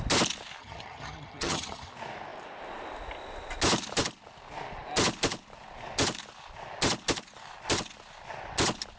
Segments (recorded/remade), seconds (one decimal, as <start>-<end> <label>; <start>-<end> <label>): 0.0-0.6 recorded; 0.6-1.9 remade; 1.9-9.0 recorded